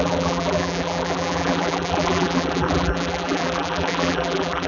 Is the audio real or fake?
fake